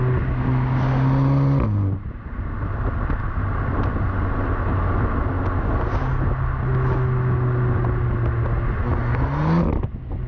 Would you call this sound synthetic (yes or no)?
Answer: no